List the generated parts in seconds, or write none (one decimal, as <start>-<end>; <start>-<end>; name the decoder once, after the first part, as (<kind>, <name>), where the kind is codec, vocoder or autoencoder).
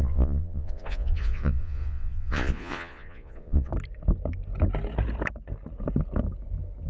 0.0-3.7 (vocoder, Vocos)